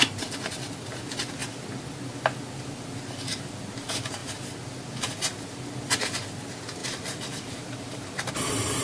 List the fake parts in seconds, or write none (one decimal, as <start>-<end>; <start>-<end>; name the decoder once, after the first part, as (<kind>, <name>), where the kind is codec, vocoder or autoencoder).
6.8-8.3 (vocoder, BigVGAN v2)